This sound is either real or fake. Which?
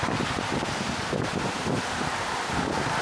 real